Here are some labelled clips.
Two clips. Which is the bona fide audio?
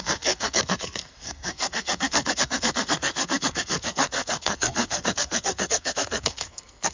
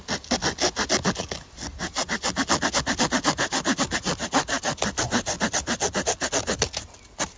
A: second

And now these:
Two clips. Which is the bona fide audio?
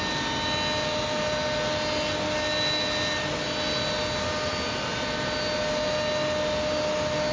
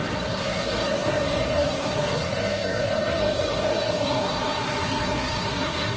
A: first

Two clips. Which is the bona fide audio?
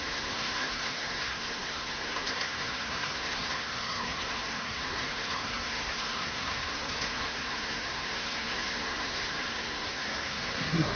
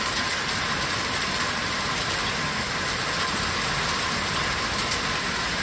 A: second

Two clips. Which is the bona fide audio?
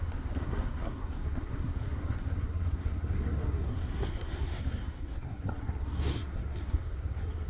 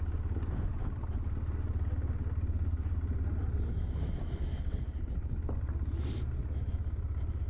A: second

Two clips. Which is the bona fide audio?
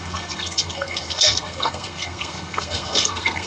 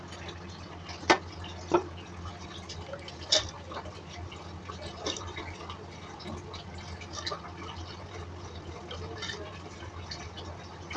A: second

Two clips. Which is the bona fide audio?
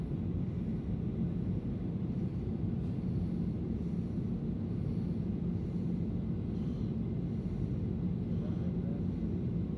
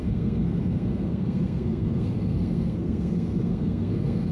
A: first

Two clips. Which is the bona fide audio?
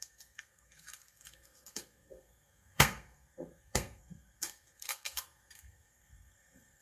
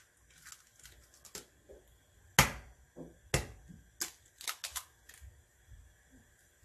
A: second